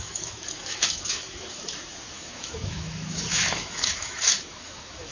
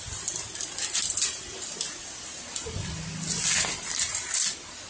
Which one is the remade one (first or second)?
first